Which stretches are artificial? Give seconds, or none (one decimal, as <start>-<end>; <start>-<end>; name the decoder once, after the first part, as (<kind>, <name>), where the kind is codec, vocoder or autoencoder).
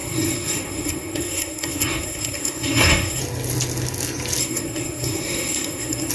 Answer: 0.0-3.2 (codec, SNAC); 4.4-6.1